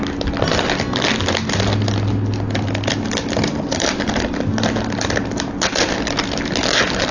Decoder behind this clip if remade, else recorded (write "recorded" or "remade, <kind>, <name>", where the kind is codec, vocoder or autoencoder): recorded